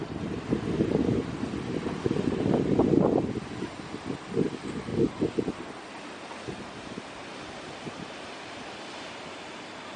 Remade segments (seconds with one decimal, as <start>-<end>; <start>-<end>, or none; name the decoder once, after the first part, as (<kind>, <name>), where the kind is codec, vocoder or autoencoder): none